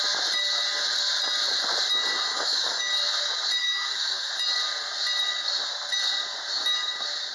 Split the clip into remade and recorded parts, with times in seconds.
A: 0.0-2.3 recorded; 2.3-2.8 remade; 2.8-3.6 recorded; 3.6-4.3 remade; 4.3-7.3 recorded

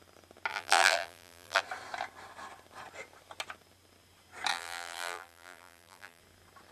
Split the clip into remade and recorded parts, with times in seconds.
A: 0.0-0.5 recorded; 0.5-1.6 remade; 1.6-4.5 recorded; 4.5-6.2 remade; 6.2-6.7 recorded

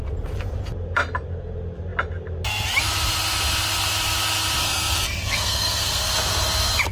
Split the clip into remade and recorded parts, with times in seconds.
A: 0.0-4.6 recorded; 4.6-6.1 remade; 6.1-6.9 recorded

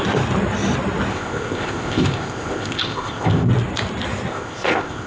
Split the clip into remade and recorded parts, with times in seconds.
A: 0.0-1.1 recorded; 1.1-3.5 remade; 3.5-4.3 recorded; 4.3-5.1 remade

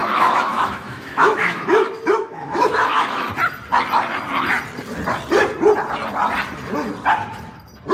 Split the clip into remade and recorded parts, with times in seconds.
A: 0.0-3.3 remade; 3.3-7.9 recorded

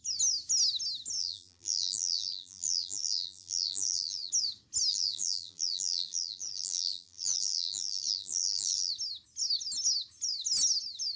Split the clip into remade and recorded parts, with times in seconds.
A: 0.0-1.2 recorded; 1.2-4.3 remade; 4.3-4.9 recorded; 4.9-8.9 remade; 8.9-11.2 recorded

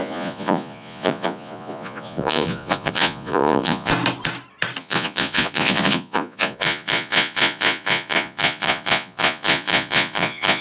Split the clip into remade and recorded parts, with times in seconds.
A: 0.0-3.9 remade; 3.9-4.8 recorded; 4.8-10.6 remade

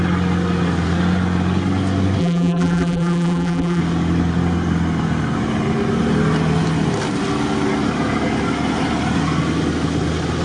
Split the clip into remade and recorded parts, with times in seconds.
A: 0.0-2.2 recorded; 2.2-3.8 remade; 3.8-10.4 recorded